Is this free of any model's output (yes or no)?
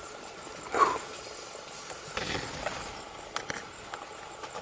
yes